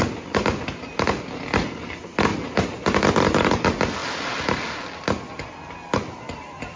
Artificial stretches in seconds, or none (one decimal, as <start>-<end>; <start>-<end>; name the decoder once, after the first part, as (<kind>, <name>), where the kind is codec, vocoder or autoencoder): none